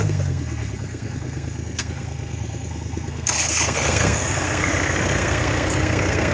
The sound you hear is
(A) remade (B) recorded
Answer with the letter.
A